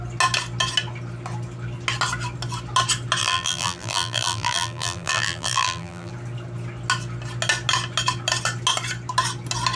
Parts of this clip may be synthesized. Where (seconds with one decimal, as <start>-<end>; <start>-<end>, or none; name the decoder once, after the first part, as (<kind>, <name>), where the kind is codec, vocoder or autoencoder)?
3.2-6.1 (vocoder, BigVGAN v2)